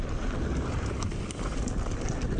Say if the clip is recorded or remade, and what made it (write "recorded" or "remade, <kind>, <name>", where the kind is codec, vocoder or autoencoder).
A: recorded